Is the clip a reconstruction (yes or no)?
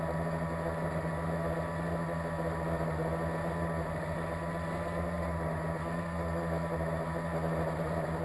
no